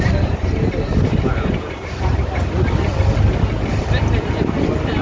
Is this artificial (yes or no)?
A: no